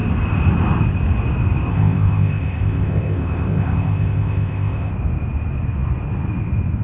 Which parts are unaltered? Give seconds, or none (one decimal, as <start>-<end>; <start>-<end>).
0.0-1.7; 4.9-6.8